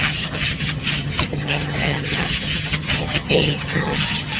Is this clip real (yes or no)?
no